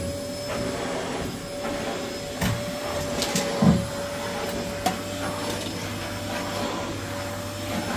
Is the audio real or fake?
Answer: real